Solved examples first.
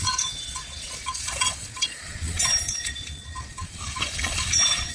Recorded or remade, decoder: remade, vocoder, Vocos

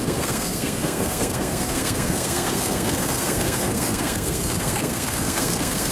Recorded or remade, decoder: remade, codec, SNAC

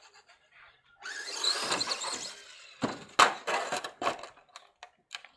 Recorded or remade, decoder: recorded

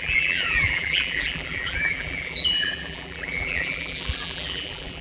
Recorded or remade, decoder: remade, vocoder, BigVGAN v2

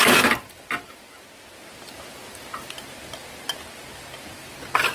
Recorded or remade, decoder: recorded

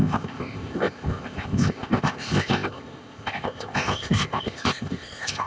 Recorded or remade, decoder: remade, codec, ZipCodec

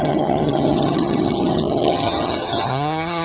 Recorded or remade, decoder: remade, vocoder, HiFi-GAN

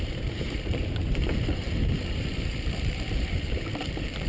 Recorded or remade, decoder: remade, vocoder, BigVGAN v2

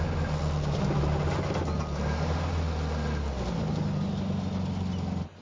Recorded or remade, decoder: recorded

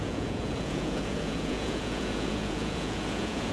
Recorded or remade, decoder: remade, vocoder, Vocos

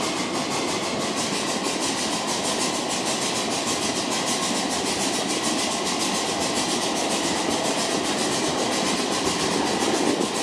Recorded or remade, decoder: recorded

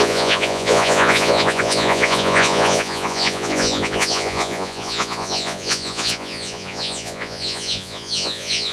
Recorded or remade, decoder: remade, vocoder, Vocos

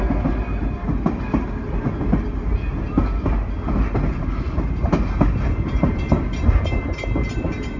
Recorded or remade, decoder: recorded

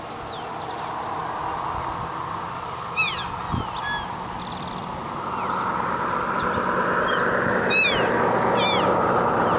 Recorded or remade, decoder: recorded